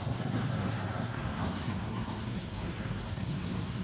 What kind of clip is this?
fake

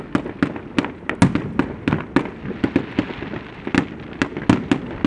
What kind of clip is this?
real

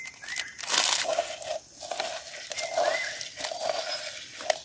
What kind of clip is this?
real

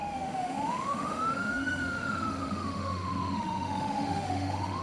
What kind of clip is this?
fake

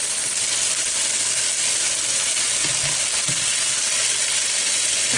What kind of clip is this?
real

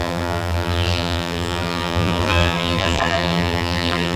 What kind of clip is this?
fake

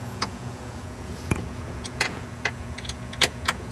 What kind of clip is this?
fake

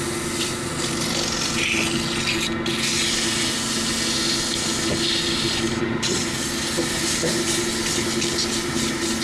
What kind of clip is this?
real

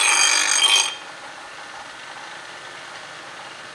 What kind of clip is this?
real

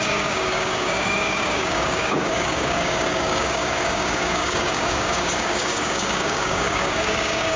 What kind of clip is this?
fake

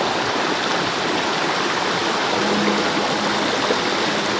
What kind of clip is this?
real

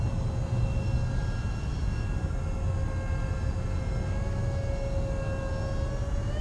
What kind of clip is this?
real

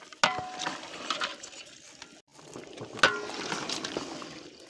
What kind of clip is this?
real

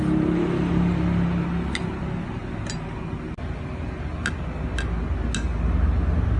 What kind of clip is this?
real